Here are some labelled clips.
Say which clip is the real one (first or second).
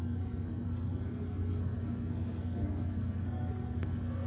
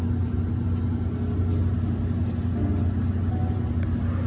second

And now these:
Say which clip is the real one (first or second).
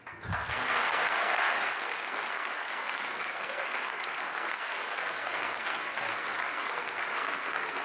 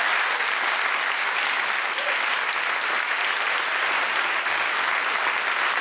second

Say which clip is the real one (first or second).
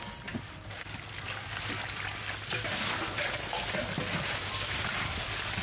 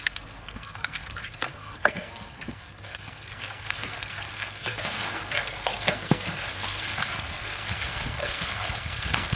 first